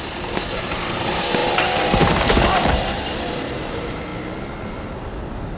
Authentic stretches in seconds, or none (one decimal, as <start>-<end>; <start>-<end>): 4.1-5.6